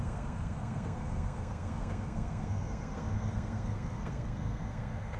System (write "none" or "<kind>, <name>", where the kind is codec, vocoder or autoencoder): codec, SNAC